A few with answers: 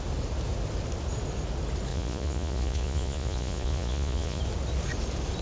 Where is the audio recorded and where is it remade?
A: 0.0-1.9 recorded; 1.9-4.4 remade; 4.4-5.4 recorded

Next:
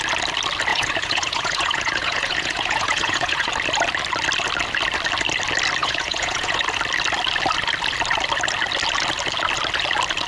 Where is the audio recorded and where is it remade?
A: 0.0-0.7 recorded; 0.7-3.5 remade; 3.5-5.8 recorded; 5.8-6.6 remade; 6.6-10.3 recorded

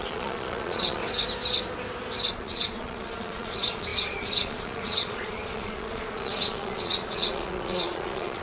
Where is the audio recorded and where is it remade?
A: 0.0-1.0 remade; 1.0-2.3 recorded; 2.3-8.4 remade

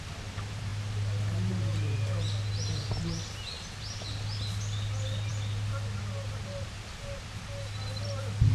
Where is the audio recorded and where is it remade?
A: 0.0-8.5 recorded